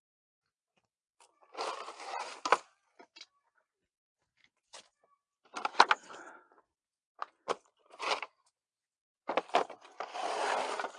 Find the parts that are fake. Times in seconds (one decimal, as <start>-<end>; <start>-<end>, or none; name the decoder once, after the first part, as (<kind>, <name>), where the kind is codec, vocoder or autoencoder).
1.1-2.3 (vocoder, BigVGAN v2); 7.1-8.5